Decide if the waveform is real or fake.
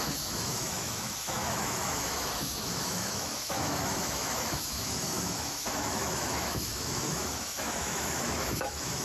fake